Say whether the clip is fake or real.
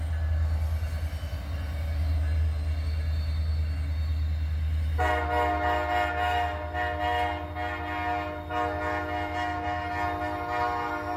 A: real